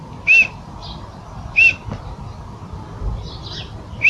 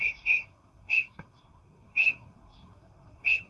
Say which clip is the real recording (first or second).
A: first